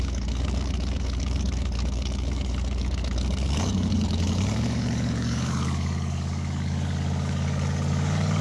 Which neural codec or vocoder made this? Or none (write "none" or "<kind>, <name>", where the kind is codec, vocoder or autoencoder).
codec, DAC